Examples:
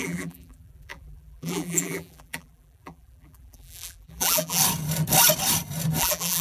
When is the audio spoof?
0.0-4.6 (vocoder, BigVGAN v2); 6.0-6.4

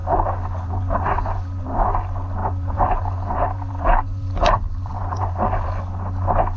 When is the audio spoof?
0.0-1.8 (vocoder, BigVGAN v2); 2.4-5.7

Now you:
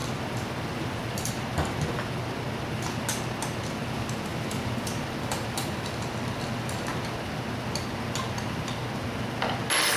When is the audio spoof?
0.0-1.3 (vocoder, BigVGAN v2); 4.3-6.0

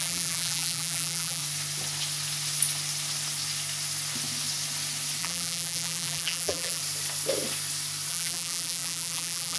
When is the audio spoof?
0.0-1.4 (vocoder, BigVGAN v2); 5.2-6.8; 8.1-9.6

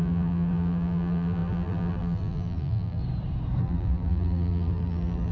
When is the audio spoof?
0.0-3.0 (vocoder, BigVGAN v2); 3.6-5.3